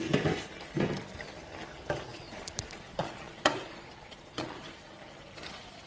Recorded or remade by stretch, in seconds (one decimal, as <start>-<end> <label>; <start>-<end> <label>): 0.0-2.1 recorded; 2.1-4.7 remade; 4.7-5.9 recorded